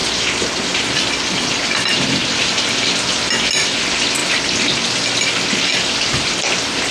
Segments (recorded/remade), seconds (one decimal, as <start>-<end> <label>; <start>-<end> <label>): 0.0-6.9 recorded